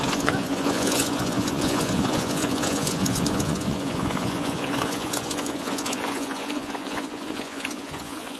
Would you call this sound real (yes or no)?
no